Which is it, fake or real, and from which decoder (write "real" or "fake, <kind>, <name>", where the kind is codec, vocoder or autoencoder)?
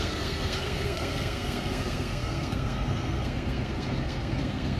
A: fake, codec, SNAC